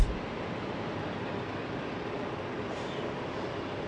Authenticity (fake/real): real